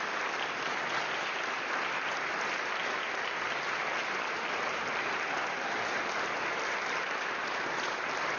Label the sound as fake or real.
real